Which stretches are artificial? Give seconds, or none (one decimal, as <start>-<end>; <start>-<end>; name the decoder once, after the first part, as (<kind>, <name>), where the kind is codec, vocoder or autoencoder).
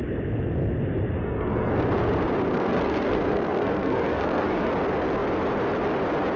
1.2-1.7 (codec, SNAC); 2.5-4.7